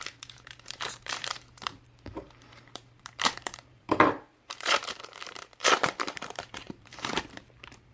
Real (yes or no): no